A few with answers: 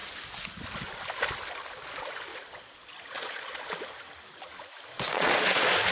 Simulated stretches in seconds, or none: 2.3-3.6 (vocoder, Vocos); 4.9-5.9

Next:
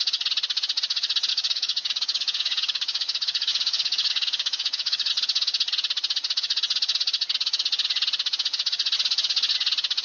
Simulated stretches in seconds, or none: 1.3-5.1 (codec, DAC)

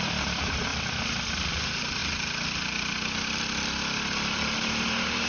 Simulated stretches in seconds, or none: 0.0-0.7 (vocoder, BigVGAN v2); 1.5-2.0; 4.6-5.3